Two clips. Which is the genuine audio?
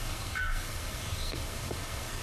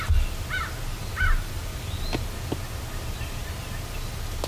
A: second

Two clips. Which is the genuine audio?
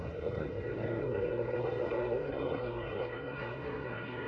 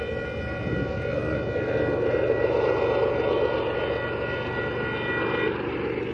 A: second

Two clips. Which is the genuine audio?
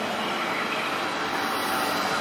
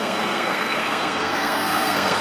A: first